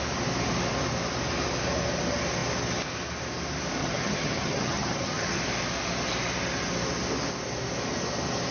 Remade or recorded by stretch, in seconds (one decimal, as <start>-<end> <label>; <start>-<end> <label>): 0.0-3.8 recorded; 3.8-5.4 remade; 5.4-8.5 recorded